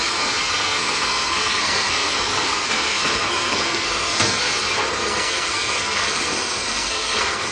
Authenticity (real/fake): fake